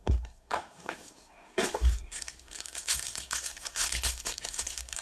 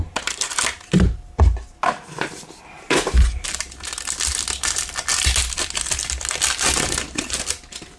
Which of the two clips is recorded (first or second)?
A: second